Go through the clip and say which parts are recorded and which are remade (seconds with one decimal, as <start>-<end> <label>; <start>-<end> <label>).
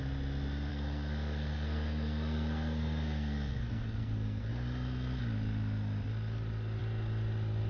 0.0-0.7 recorded; 0.7-4.5 remade; 4.5-7.7 recorded